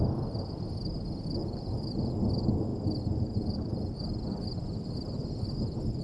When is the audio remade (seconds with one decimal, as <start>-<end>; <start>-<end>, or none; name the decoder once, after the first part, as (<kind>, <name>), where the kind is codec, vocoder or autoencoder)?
1.4-2.0 (vocoder, BigVGAN v2)